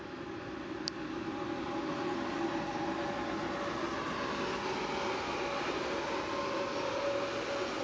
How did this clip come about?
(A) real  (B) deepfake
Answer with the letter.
A